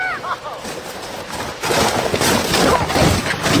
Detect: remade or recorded recorded